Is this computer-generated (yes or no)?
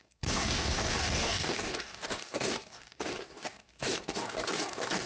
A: yes